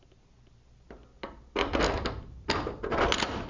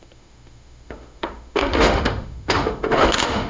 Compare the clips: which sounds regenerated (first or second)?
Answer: second